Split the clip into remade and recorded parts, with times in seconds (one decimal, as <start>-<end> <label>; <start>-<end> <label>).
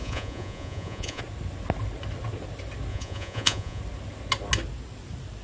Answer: 0.0-1.2 remade; 1.2-2.9 recorded; 2.9-3.8 remade; 3.8-5.4 recorded